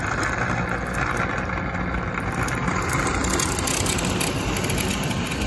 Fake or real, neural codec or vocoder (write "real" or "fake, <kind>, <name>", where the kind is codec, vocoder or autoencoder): real